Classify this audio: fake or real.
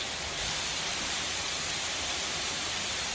real